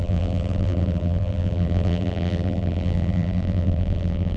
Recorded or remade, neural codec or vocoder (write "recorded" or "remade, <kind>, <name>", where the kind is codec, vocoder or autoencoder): remade, vocoder, BigVGAN v2